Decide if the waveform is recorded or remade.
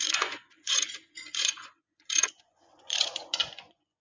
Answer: remade